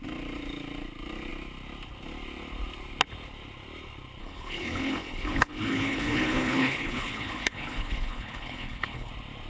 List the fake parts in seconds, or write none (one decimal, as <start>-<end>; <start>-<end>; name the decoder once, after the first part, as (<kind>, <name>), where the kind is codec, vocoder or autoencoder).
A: 4.2-9.1 (codec, HILCodec)